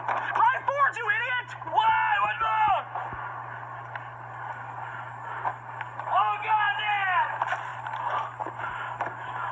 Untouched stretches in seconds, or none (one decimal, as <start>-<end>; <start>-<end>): 0.0-9.5